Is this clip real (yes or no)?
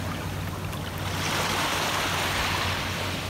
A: yes